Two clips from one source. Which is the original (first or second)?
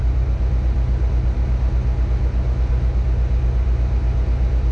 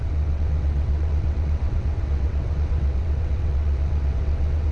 first